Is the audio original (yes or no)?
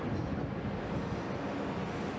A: yes